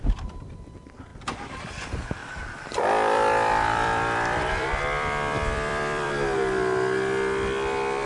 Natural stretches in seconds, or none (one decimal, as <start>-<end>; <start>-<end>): 0.0-1.1; 1.7-2.2; 6.1-8.1